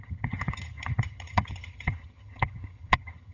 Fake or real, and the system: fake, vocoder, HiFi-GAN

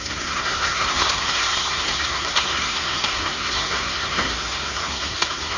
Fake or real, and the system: fake, codec, SNAC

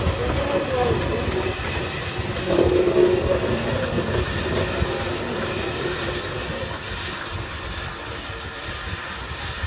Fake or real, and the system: real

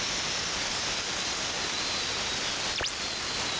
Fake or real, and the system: fake, vocoder, BigVGAN v2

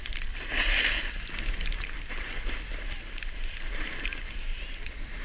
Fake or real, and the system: real